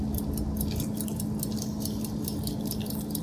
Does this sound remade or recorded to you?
recorded